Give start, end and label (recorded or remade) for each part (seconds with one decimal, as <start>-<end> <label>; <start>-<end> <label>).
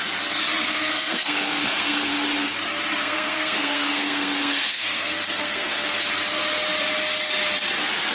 0.0-0.7 recorded; 0.7-2.1 remade; 2.1-3.0 recorded; 3.0-6.0 remade; 6.0-8.1 recorded